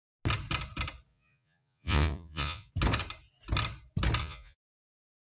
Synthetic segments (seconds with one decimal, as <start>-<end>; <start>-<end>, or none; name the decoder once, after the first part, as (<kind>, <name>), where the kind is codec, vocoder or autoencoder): 1.1-2.7 (vocoder, Vocos); 4.2-4.8